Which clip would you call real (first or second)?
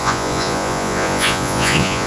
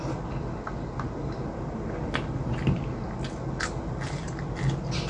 second